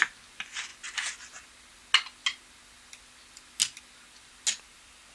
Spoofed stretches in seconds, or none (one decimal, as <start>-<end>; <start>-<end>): none